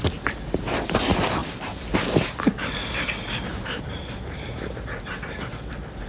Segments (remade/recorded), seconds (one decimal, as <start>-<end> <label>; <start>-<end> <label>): 0.0-1.4 recorded; 1.4-1.9 remade; 1.9-3.5 recorded; 3.5-4.4 remade; 4.4-6.1 recorded

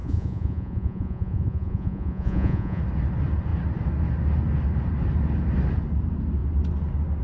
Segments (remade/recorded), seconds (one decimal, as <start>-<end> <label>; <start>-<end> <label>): 0.0-2.8 remade; 2.8-7.2 recorded

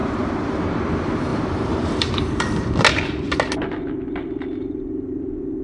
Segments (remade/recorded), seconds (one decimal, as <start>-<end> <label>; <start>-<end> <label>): 0.0-0.8 remade; 0.8-1.3 recorded; 1.3-2.2 remade; 2.2-5.6 recorded

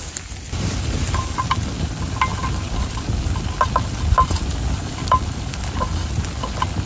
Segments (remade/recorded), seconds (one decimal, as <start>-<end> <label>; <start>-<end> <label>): 0.0-6.9 recorded

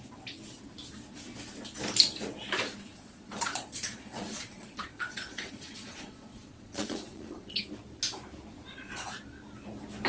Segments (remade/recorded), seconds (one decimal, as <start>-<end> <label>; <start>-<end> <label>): 0.0-2.7 recorded; 2.7-7.6 remade; 7.6-8.5 recorded; 8.5-9.2 remade; 9.2-10.1 recorded